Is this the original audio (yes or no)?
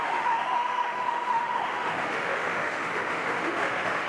no